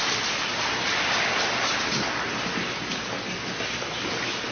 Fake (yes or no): no